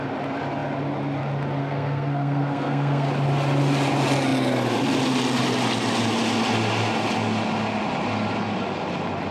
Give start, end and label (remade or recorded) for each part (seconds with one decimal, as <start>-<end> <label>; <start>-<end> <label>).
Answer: 0.0-1.6 recorded; 1.6-3.1 remade; 3.1-9.3 recorded